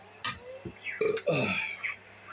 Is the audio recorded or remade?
recorded